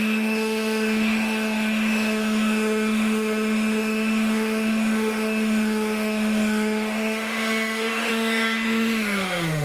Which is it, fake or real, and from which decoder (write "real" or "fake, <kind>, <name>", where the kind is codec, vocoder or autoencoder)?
fake, autoencoder, DAC-VAE